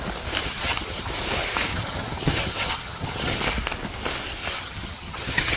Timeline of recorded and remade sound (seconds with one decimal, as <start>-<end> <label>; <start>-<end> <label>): 0.0-0.4 recorded; 0.4-1.1 remade; 1.1-1.7 recorded; 1.7-3.4 remade; 3.4-4.4 recorded; 4.4-5.6 remade